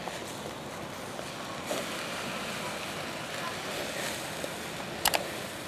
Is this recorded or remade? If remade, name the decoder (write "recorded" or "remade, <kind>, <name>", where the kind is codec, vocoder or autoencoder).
recorded